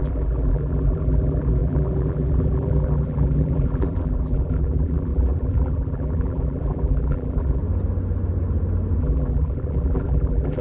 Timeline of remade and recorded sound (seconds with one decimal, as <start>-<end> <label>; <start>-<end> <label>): 0.0-7.6 remade; 7.6-9.0 recorded; 9.0-10.6 remade